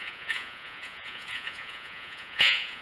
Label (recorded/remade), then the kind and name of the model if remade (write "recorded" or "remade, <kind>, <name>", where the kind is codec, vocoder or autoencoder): remade, vocoder, Vocos